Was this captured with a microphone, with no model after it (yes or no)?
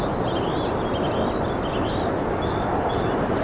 yes